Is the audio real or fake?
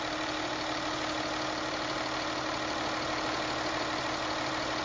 real